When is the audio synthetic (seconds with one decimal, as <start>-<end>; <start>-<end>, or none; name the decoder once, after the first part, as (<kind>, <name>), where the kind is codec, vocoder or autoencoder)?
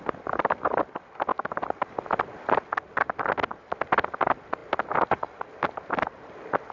none